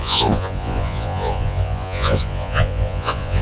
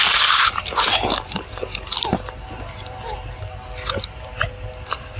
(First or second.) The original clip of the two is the second